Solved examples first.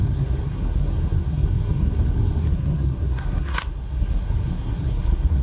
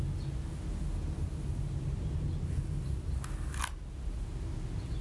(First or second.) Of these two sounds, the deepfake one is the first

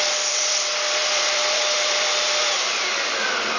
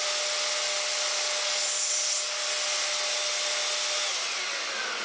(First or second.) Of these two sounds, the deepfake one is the first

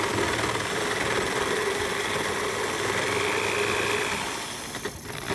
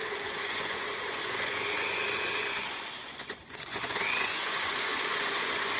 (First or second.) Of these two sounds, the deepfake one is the second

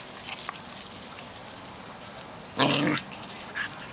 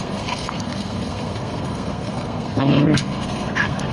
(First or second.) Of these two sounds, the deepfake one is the second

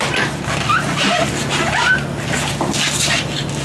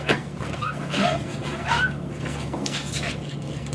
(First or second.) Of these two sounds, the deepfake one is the second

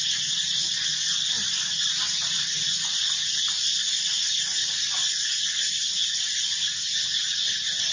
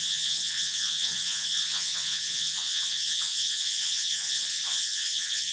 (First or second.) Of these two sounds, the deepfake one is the second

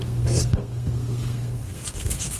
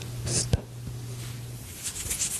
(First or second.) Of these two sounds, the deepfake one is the first